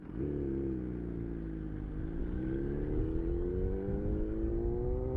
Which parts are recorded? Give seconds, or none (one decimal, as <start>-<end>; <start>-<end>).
0.0-2.2; 3.5-3.9; 4.5-5.2